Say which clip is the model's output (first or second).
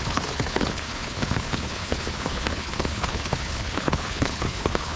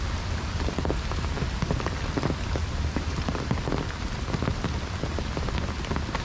first